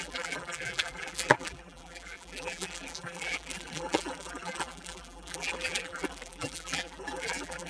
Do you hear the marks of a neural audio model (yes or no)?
yes